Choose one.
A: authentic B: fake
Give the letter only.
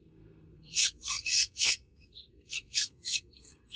B